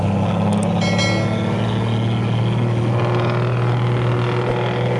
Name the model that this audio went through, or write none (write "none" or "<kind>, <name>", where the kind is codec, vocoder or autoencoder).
none